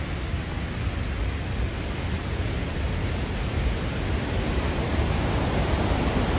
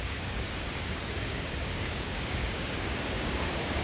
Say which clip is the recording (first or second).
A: first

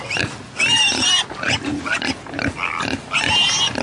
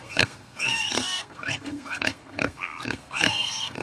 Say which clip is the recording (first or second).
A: first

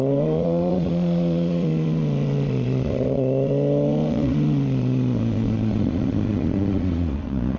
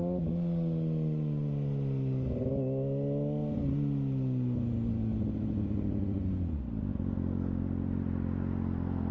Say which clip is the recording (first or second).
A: second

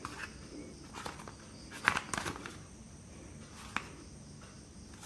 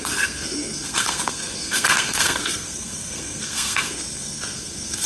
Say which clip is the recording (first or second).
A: first